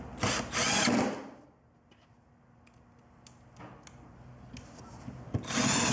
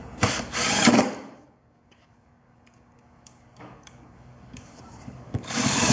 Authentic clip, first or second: first